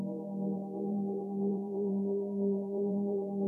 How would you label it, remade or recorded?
remade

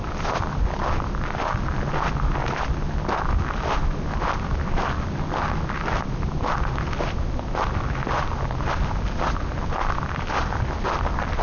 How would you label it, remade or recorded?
recorded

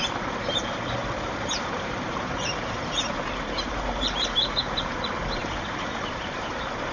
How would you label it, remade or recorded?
remade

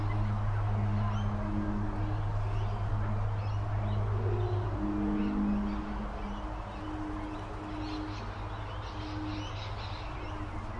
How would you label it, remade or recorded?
recorded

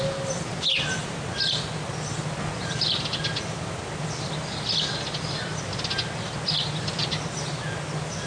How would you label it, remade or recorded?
recorded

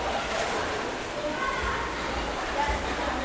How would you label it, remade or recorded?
recorded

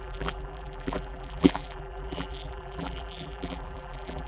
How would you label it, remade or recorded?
remade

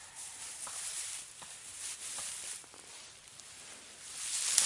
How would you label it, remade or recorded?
recorded